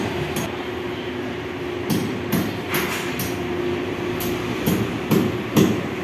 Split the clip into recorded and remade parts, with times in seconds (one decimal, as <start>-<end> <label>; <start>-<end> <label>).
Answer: 0.0-6.0 recorded